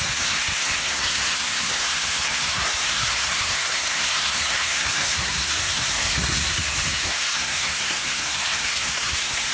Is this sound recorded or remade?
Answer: remade